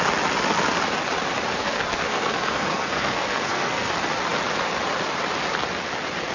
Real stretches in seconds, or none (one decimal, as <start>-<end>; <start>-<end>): 0.0-1.5; 3.9-6.3